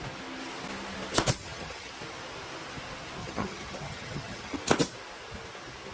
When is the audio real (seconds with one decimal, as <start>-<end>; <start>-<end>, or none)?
0.0-1.4; 1.9-3.2; 4.6-5.9